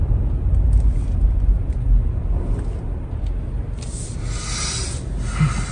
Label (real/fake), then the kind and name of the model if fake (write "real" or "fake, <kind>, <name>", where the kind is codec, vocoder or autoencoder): real